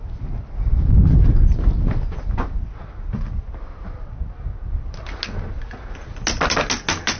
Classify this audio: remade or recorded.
recorded